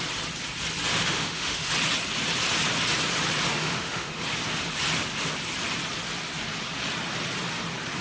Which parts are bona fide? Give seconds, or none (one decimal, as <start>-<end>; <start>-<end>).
0.0-0.9; 1.7-3.6; 4.2-8.0